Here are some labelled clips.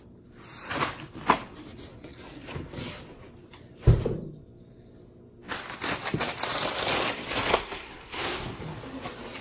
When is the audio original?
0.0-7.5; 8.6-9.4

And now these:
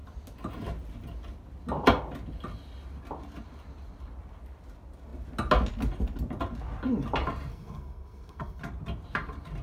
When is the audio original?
0.0-7.5; 8.6-9.6

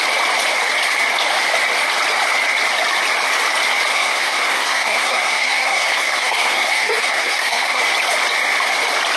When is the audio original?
0.0-3.9; 7.8-9.2